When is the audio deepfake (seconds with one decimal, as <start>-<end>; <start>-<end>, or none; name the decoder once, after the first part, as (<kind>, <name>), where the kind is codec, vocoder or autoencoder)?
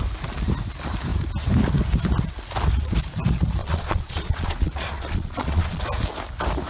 3.6-5.8 (vocoder, Vocos)